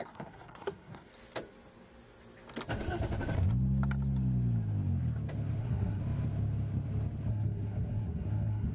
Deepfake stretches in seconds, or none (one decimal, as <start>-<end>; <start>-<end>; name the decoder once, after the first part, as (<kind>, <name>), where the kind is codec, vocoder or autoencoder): 0.0-1.1 (codec, SNAC); 5.6-6.0; 7.3-8.7